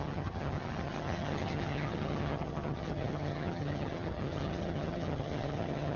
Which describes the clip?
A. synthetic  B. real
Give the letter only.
A